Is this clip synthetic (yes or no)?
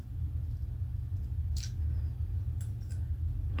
no